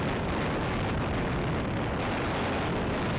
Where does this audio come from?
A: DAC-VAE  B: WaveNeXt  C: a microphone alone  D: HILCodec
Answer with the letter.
C